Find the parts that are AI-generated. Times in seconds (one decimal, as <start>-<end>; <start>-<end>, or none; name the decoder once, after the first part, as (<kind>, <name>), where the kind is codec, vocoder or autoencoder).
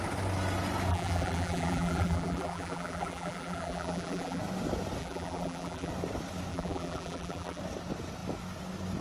0.9-4.4 (vocoder, BigVGAN v2); 5.0-5.9; 6.5-7.6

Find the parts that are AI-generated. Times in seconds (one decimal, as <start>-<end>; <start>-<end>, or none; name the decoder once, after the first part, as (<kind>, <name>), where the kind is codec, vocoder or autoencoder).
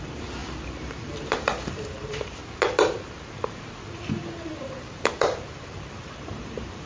0.0-2.4 (vocoder, BigVGAN v2); 3.9-6.9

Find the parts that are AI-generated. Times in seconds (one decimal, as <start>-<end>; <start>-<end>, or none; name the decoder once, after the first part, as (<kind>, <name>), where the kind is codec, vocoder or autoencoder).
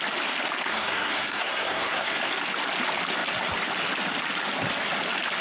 0.7-2.2 (codec, SNAC)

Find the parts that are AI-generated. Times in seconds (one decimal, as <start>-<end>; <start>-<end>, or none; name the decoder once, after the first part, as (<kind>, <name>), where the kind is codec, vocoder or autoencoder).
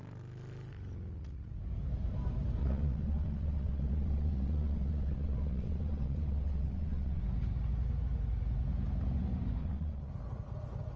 2.6-7.2 (vocoder, WaveNeXt); 9.6-10.1